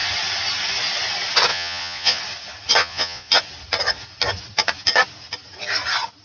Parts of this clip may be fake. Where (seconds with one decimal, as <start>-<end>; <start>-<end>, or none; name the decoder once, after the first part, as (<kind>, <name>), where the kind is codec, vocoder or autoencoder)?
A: 1.5-2.2 (vocoder, Vocos); 2.8-3.3